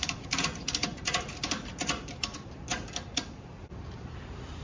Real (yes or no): no